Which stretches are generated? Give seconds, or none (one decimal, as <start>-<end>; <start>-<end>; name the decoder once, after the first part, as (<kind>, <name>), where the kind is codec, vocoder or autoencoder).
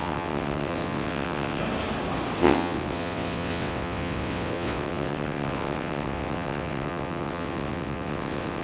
0.0-1.6 (vocoder, WaveNeXt); 2.4-8.6